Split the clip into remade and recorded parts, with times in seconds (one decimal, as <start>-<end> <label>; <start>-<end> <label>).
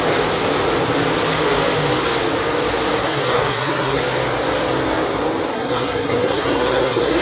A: 0.0-3.0 recorded; 3.0-4.0 remade; 4.0-5.5 recorded; 5.5-7.2 remade